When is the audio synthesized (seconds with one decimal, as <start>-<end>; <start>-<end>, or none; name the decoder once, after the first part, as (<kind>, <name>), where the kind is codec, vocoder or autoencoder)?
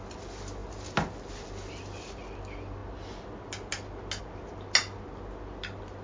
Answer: none